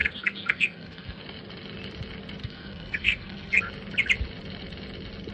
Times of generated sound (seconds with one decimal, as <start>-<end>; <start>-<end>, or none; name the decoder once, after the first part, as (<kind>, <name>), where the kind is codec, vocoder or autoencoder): 0.0-1.2 (codec, SNAC); 2.4-3.6